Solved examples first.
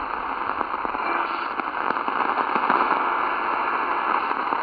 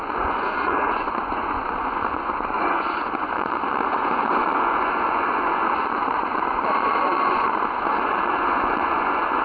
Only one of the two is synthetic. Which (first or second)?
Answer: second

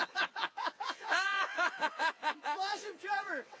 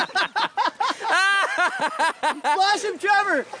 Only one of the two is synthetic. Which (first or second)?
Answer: first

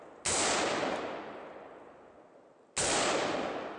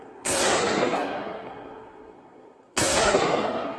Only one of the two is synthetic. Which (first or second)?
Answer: second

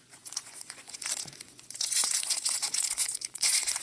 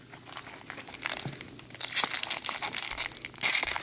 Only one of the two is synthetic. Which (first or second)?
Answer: first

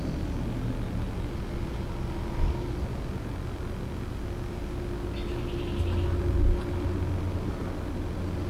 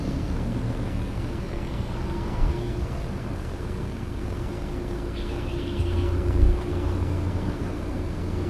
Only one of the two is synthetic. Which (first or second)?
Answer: second